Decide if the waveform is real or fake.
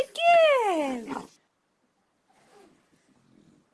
real